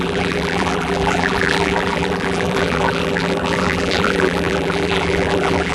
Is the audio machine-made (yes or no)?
yes